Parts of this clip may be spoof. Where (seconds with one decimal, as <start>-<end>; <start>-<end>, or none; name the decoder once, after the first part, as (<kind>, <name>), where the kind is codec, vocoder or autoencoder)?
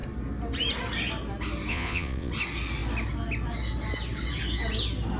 1.7-2.3 (vocoder, Vocos)